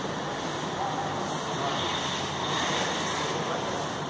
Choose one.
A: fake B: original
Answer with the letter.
B